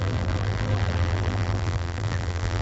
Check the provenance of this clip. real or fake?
fake